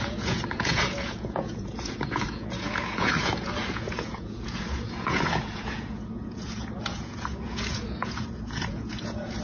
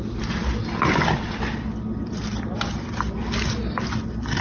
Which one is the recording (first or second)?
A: second